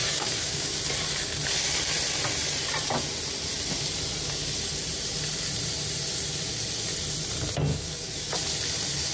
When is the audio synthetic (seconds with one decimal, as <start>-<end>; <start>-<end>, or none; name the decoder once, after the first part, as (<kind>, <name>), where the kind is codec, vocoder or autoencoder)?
0.0-0.8 (codec, DAC); 7.7-8.3